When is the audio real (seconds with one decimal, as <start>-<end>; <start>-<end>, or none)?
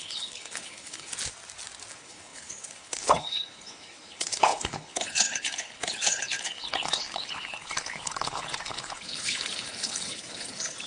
1.1-1.9